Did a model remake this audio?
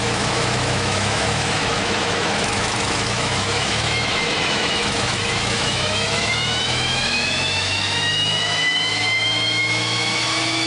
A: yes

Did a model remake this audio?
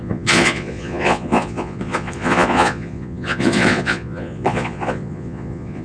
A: yes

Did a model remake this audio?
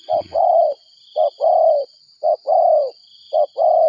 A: no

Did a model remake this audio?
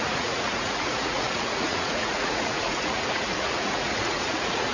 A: yes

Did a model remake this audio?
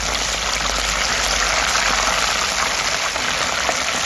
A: no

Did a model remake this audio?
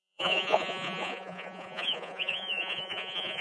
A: yes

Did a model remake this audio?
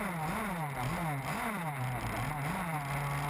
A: no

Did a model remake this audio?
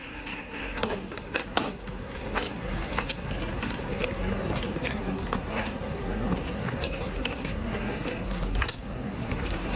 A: yes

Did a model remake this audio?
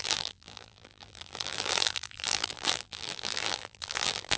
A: yes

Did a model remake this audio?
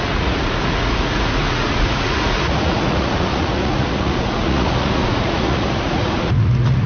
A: yes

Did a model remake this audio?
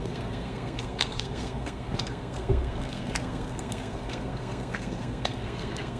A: yes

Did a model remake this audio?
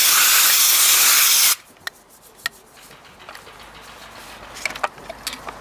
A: no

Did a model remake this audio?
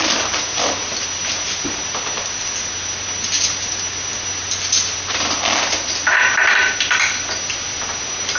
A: yes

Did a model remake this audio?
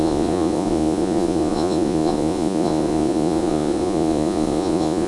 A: yes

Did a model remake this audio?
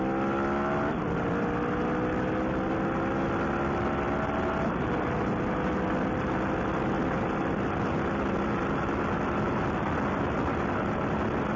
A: no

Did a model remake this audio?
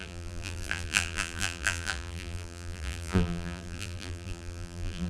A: yes